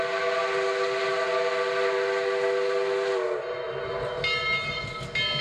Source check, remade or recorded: recorded